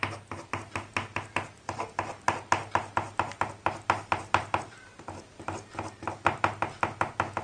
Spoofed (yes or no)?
no